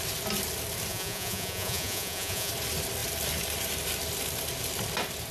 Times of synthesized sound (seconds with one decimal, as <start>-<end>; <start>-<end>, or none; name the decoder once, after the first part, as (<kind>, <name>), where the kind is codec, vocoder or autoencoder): 0.9-2.5 (vocoder, Vocos)

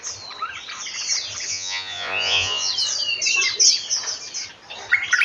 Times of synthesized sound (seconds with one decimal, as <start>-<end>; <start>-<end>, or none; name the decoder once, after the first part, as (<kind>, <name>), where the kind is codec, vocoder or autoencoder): 1.5-2.7 (vocoder, Vocos)

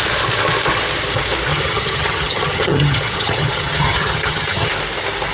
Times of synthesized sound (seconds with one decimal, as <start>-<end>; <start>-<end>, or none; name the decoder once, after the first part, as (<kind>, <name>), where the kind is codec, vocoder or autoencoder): 1.5-4.7 (vocoder, HiFi-GAN)